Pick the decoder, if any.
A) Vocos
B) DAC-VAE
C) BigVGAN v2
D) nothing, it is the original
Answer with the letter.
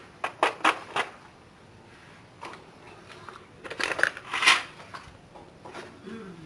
D